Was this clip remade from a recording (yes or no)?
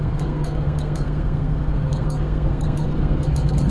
yes